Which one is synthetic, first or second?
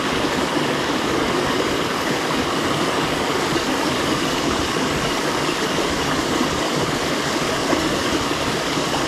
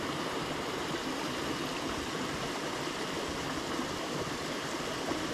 first